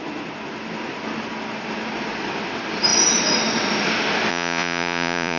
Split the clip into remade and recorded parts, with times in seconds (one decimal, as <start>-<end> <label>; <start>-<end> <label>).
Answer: 0.0-4.3 recorded; 4.3-5.4 remade